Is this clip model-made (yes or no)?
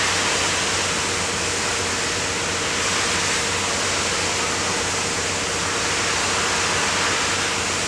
no